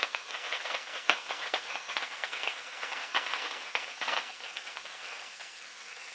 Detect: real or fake fake